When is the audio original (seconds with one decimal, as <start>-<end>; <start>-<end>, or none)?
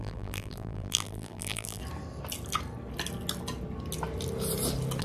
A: 1.8-5.0